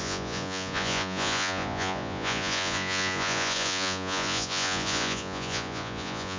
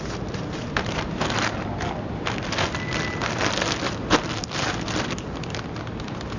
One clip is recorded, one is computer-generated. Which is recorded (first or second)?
second